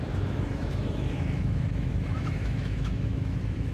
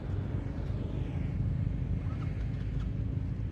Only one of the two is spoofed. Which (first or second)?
first